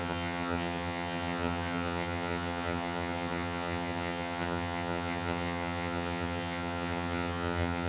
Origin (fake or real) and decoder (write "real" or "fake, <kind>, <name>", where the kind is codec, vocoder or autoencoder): fake, vocoder, HiFi-GAN